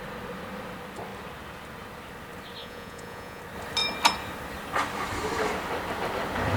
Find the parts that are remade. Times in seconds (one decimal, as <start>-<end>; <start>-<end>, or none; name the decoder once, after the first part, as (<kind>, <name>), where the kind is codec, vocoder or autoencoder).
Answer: 2.6-3.4 (vocoder, Vocos)